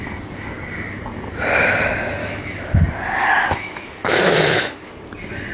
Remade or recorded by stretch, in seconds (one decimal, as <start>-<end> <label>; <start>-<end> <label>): 0.0-2.2 recorded; 2.2-2.8 remade; 2.8-3.4 recorded; 3.4-4.9 remade; 4.9-5.5 recorded